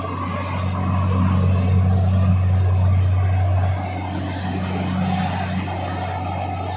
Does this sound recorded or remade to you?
recorded